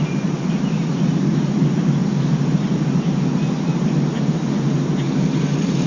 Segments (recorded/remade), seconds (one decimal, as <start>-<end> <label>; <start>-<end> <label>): 0.0-5.9 recorded